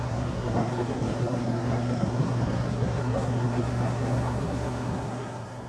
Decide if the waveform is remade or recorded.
remade